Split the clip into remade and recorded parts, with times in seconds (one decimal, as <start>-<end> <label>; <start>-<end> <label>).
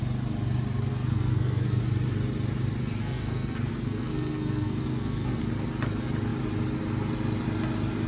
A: 0.0-0.9 recorded; 0.9-1.8 remade; 1.8-3.0 recorded; 3.0-5.4 remade; 5.4-8.1 recorded